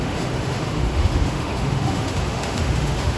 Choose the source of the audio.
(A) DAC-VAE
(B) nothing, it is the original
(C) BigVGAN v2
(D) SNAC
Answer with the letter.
A